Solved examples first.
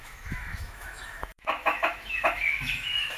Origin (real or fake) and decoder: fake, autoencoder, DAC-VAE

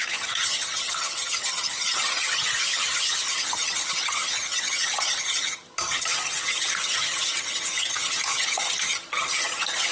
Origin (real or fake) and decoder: fake, vocoder, HiFi-GAN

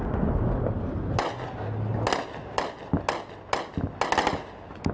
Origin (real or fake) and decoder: real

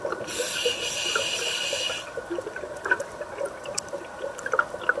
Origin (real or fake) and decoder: real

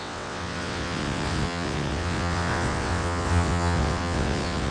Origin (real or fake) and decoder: fake, vocoder, WaveNeXt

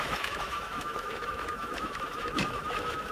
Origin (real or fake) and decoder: fake, autoencoder, DAC-VAE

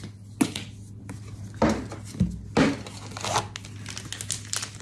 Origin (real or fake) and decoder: real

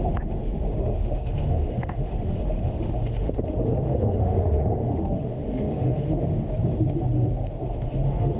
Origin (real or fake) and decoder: fake, autoencoder, DAC-VAE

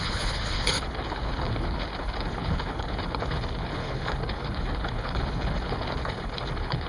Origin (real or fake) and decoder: fake, codec, HILCodec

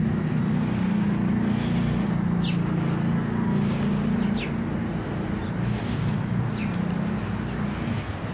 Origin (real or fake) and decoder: real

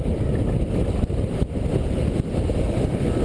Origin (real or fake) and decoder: real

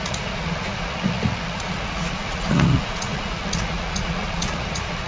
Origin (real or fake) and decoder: fake, vocoder, Vocos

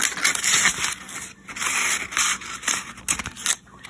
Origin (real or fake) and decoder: real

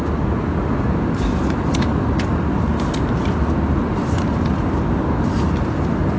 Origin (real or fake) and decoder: real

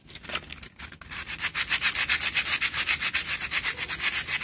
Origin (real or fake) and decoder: real